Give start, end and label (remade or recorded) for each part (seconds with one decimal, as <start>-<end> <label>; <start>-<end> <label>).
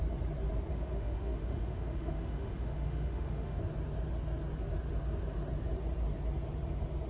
0.0-0.7 recorded; 0.7-3.6 remade; 3.6-7.1 recorded